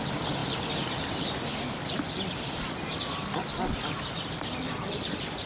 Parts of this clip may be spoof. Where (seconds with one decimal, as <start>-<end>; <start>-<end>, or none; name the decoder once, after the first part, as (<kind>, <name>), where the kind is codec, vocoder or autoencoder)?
none